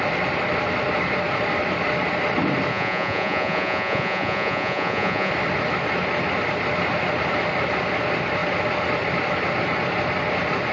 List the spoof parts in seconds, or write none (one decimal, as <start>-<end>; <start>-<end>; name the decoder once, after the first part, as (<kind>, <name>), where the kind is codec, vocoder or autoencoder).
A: 2.7-5.3 (vocoder, Vocos)